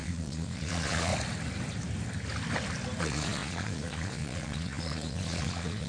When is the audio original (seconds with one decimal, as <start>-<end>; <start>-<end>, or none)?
1.1-3.0